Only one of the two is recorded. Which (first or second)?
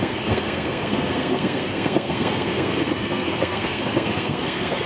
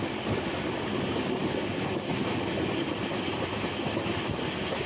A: second